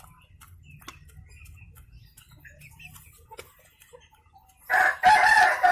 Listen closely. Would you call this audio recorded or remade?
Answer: recorded